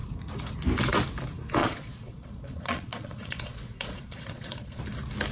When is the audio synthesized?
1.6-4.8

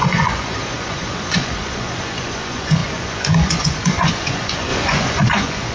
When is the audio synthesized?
0.0-5.7

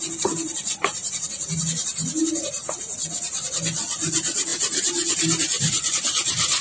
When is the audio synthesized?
none